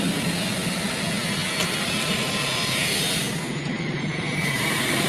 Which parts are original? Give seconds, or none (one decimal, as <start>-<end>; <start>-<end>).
0.0-5.1